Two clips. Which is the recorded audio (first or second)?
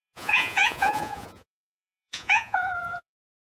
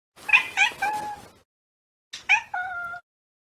second